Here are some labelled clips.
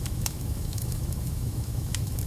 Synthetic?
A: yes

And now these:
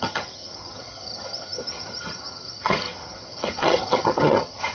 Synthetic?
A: yes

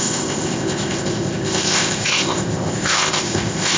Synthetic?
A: yes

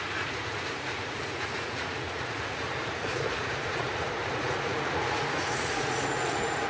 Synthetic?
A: yes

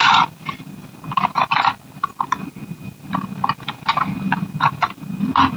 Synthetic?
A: no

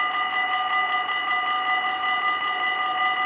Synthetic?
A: no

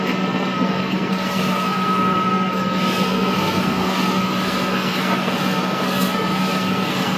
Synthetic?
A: yes